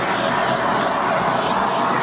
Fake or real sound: real